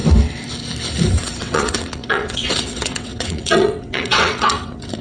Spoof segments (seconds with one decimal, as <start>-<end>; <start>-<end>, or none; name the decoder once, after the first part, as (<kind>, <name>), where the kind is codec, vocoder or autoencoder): 1.1-5.0 (vocoder, WaveNeXt)